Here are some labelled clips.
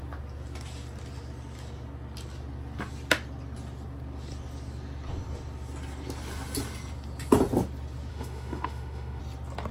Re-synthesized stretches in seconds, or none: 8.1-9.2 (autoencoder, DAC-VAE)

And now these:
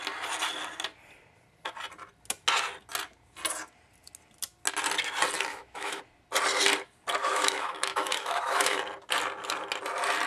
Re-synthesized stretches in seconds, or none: 5.5-6.0 (autoencoder, DAC-VAE); 7.2-8.8